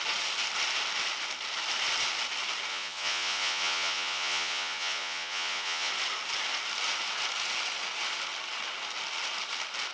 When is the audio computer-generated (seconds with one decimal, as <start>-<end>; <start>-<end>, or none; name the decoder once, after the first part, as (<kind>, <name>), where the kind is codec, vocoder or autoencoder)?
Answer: 2.7-5.9 (vocoder, Vocos)